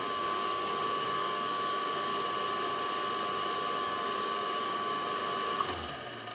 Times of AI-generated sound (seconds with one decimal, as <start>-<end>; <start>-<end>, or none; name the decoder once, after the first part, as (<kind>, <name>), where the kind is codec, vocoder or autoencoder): 0.0-2.1 (codec, DAC); 3.8-5.2